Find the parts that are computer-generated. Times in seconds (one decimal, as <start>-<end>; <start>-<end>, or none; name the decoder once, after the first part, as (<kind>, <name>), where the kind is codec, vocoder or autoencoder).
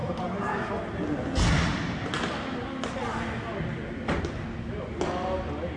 none